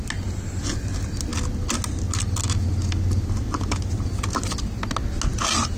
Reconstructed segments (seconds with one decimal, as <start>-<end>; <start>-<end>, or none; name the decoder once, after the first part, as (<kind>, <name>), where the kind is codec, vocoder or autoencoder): none

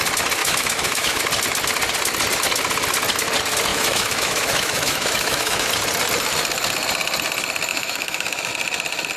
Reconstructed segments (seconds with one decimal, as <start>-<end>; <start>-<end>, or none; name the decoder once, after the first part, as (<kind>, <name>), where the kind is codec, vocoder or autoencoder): 0.4-1.2 (autoencoder, DAC-VAE); 3.7-5.7; 7.7-8.5